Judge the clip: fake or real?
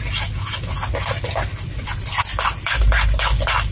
real